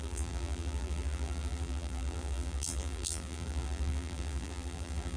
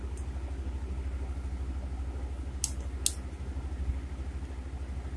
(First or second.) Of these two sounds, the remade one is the first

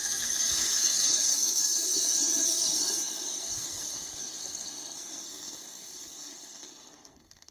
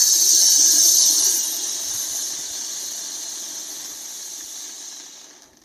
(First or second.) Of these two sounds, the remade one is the first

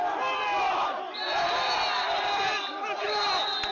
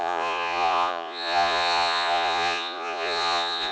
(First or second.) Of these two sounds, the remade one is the second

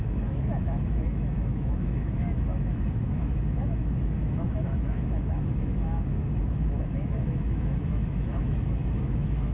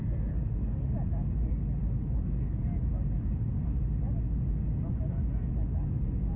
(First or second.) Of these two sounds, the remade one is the first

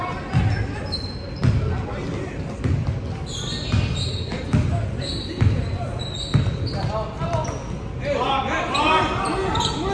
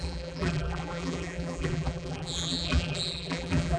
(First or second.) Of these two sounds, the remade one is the second